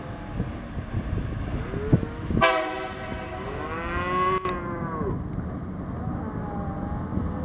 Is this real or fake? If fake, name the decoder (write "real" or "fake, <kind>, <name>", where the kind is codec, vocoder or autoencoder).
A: real